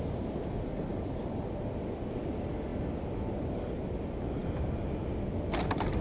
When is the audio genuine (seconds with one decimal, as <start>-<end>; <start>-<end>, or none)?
0.0-6.0

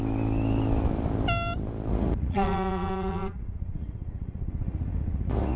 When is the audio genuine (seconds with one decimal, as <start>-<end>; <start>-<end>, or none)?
0.0-1.9

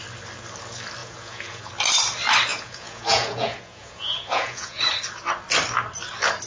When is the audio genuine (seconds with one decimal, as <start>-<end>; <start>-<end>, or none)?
0.0-1.0; 1.7-2.5; 4.8-6.5

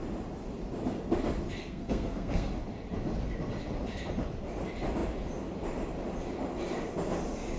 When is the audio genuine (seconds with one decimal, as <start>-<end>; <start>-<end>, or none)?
0.0-1.6; 2.5-7.6

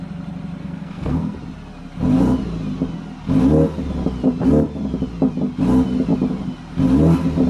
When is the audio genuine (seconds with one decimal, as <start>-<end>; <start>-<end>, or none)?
0.0-0.6; 1.4-7.5

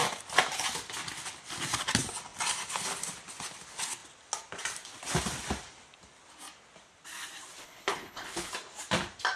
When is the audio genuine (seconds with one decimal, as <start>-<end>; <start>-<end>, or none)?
0.0-7.6; 8.5-9.4